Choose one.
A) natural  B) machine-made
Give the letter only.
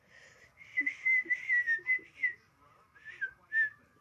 A